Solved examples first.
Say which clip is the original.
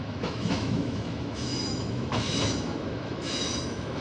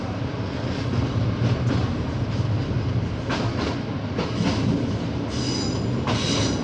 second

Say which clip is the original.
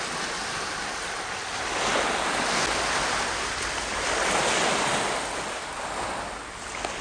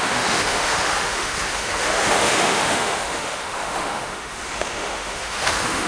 first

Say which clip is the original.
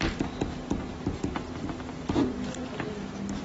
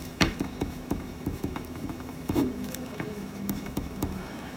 first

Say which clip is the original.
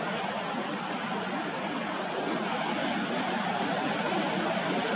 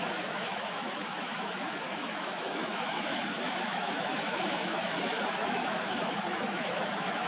first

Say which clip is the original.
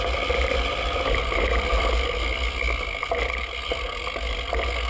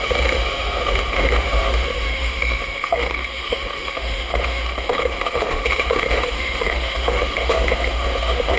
first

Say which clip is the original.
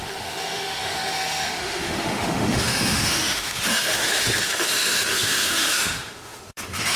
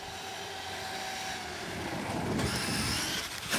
second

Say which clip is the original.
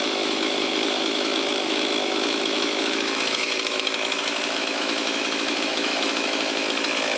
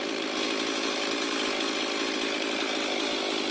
second